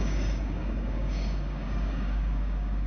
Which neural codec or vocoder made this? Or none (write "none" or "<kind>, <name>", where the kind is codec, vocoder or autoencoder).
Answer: codec, DAC